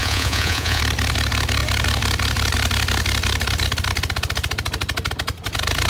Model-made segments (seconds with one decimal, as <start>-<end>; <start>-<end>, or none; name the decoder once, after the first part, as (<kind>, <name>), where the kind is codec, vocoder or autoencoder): 0.0-0.8 (vocoder, Vocos)